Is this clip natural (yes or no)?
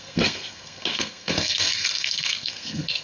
no